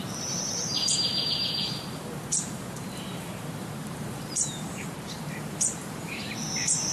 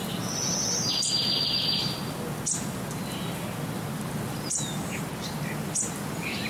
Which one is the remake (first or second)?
first